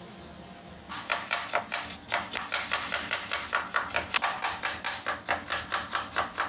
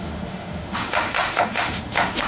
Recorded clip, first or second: first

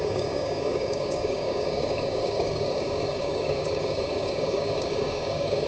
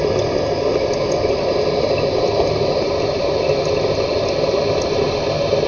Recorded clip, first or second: second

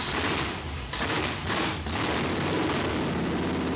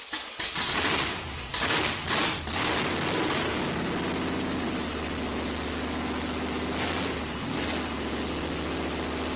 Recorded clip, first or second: second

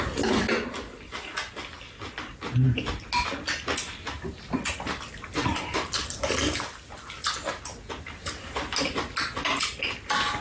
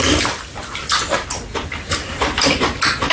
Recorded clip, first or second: first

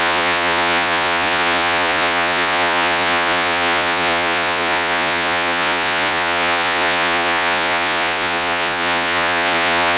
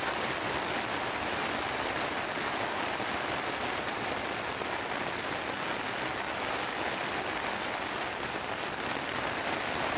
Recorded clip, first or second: second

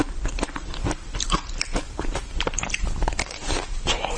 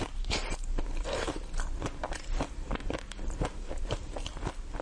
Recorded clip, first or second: second